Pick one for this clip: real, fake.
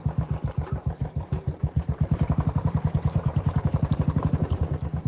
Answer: fake